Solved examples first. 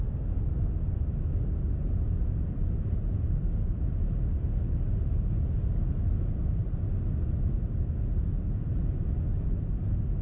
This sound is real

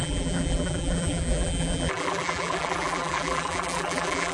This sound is fake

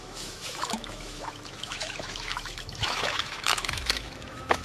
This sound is fake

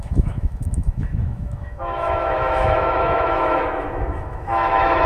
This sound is fake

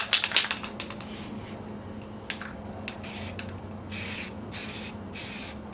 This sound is real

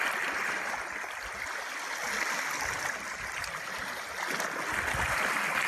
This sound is real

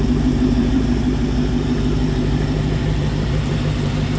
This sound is fake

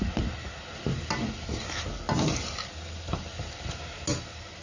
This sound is real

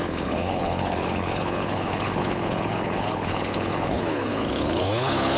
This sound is fake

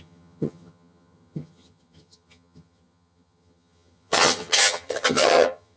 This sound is fake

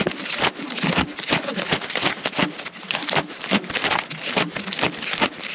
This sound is real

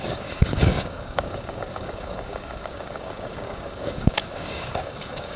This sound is fake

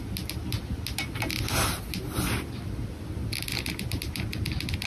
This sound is real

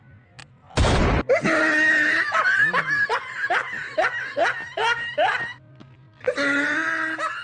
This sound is real